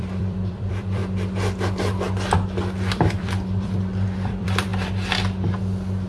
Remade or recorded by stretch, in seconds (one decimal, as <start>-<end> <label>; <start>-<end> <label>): 0.0-1.0 remade; 1.0-2.9 recorded; 2.9-4.7 remade; 4.7-6.1 recorded